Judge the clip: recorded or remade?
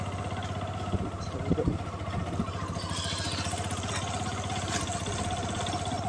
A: recorded